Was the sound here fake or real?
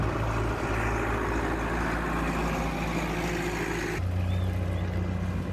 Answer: real